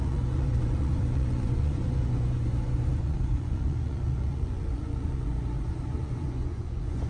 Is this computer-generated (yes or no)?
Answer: yes